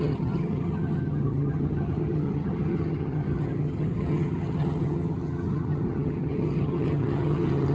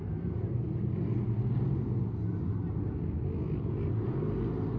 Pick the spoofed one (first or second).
first